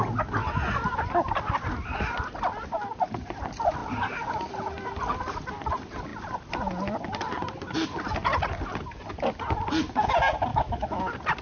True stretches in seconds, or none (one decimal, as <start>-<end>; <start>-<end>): 0.0-10.5; 11.0-11.4